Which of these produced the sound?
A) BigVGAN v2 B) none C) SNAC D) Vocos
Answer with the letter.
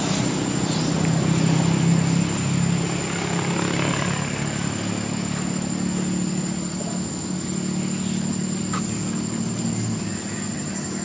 B